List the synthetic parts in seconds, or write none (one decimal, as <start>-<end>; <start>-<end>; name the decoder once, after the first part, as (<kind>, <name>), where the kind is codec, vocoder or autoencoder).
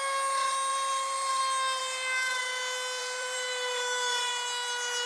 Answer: 0.7-1.4 (vocoder, BigVGAN v2); 1.8-2.4; 3.0-4.3